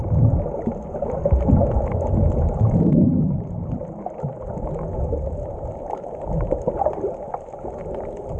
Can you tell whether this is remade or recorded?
recorded